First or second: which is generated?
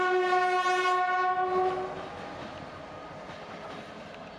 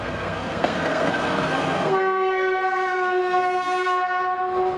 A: second